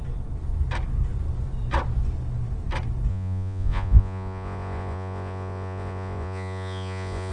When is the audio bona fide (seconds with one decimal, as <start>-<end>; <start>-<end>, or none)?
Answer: 0.0-3.1